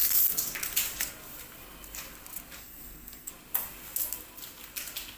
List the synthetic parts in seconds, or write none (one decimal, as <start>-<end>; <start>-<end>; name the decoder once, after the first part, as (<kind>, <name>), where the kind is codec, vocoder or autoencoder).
2.6-3.3 (codec, SNAC)